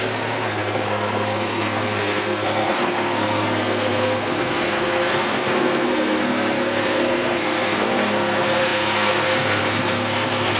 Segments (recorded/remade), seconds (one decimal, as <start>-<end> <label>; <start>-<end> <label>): 0.0-10.6 remade